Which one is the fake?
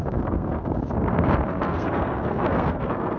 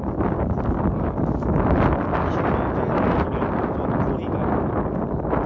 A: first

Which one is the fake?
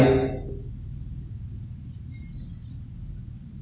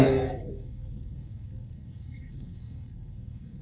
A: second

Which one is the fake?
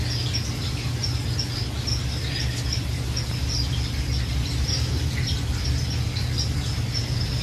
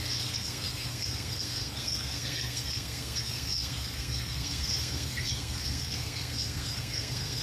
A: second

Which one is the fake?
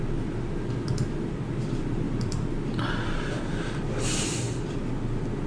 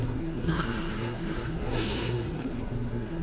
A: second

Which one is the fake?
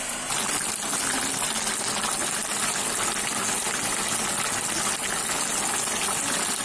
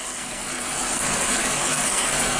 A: second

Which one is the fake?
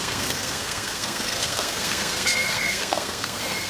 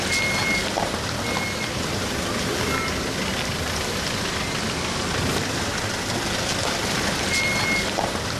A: first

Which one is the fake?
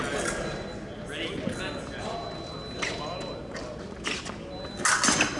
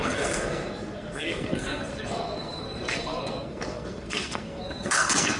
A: second